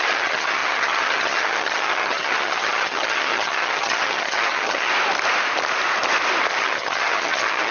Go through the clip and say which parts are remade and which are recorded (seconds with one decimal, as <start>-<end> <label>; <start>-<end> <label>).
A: 0.0-4.9 remade; 4.9-6.6 recorded; 6.6-7.7 remade